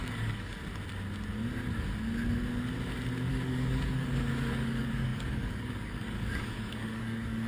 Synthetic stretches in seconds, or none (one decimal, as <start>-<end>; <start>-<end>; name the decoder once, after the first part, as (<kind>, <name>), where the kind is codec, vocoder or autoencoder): 0.0-0.6 (codec, DAC); 3.3-7.5

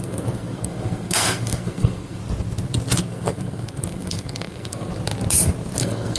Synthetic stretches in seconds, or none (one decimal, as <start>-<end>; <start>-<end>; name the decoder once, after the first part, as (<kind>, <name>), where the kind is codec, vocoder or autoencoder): 0.0-2.2 (codec, SNAC); 3.0-4.9; 5.8-6.2

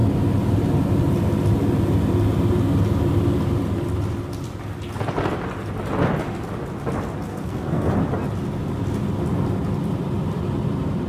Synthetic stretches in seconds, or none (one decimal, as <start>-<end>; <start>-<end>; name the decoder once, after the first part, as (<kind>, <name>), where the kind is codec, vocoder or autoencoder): 7.3-7.9 (codec, SNAC)